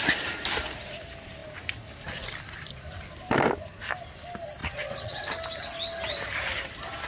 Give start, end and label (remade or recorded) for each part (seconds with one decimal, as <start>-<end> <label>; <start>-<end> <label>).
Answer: 0.0-4.6 recorded; 4.6-5.2 remade; 5.2-7.1 recorded